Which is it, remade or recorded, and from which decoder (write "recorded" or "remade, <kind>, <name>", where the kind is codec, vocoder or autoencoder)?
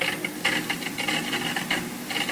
recorded